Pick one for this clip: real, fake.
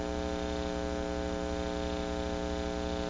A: real